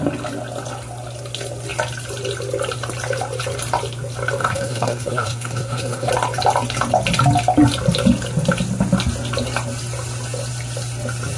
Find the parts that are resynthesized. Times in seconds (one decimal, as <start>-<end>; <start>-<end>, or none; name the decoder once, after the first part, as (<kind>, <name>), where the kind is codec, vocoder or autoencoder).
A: 4.4-6.1 (codec, SNAC)